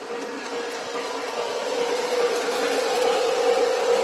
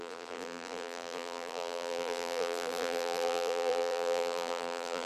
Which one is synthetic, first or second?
second